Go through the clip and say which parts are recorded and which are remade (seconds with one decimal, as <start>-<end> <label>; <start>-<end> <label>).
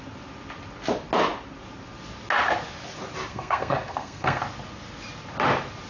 0.0-3.3 recorded; 3.3-4.4 remade; 4.4-5.9 recorded